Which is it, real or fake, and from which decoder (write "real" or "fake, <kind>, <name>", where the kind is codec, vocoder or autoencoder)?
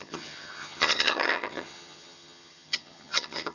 fake, vocoder, HiFi-GAN